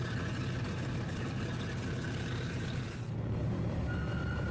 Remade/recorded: recorded